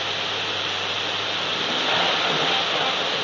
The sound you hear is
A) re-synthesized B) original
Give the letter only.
B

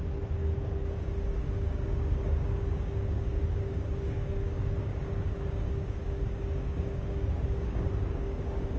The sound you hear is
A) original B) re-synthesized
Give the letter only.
B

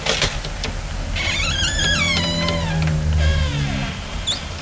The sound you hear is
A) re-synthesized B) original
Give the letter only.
B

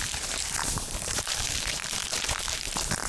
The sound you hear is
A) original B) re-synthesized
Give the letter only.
B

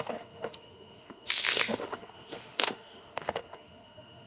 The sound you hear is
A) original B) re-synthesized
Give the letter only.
B